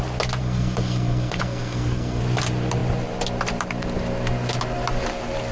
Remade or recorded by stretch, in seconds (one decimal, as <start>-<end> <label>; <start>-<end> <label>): 0.0-0.4 recorded; 0.4-2.2 remade; 2.2-5.5 recorded